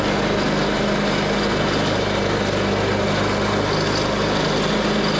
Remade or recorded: recorded